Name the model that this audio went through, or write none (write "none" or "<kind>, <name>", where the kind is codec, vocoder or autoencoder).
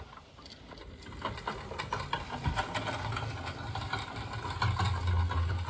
none